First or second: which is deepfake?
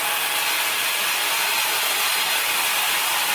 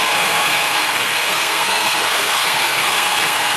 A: second